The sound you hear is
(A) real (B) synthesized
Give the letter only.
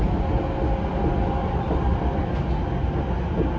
A